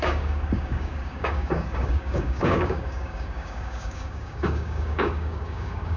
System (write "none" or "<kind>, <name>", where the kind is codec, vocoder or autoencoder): codec, DAC